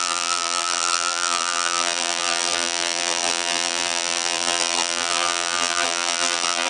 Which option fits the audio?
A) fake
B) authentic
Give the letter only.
A